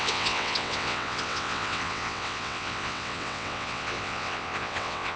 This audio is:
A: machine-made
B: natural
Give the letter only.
A